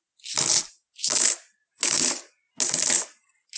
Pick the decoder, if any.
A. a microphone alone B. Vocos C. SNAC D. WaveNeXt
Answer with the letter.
A